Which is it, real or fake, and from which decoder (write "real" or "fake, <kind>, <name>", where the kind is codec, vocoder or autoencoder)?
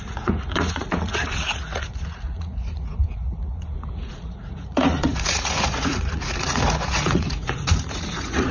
fake, vocoder, Vocos